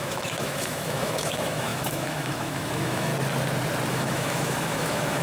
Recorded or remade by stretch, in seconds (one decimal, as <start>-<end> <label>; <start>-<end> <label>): 0.0-3.1 remade; 3.1-3.9 recorded; 3.9-5.2 remade